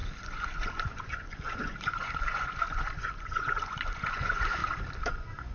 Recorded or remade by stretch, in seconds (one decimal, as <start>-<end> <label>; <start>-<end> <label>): 0.0-4.6 remade; 4.6-5.1 recorded; 5.1-5.5 remade